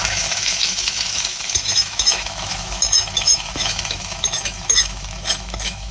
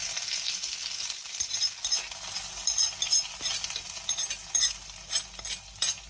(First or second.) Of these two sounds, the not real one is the first